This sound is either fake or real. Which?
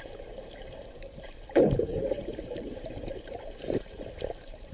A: fake